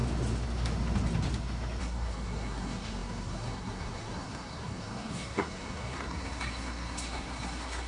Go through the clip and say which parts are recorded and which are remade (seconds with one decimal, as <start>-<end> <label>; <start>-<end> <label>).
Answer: 0.0-1.8 recorded; 1.8-7.9 remade